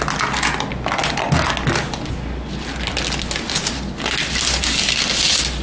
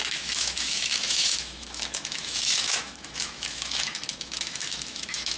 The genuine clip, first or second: first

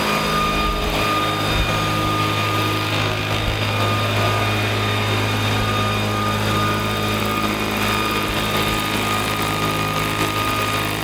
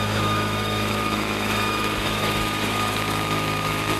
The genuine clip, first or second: first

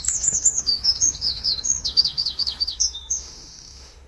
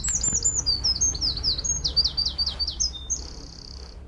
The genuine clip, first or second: second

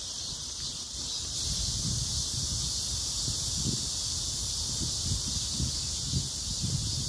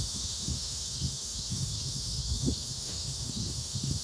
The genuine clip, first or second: first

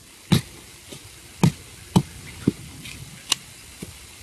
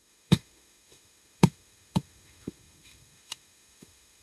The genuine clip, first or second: first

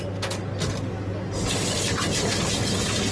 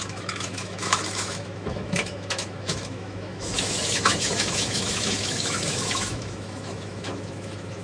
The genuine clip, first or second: first